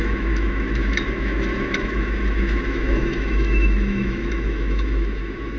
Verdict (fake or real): fake